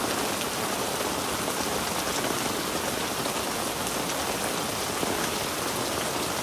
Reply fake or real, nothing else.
real